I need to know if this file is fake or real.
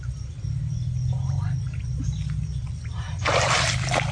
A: real